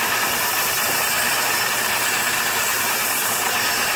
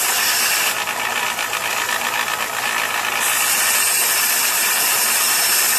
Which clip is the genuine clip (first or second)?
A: second